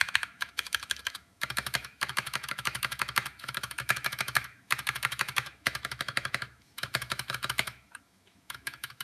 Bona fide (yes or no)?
no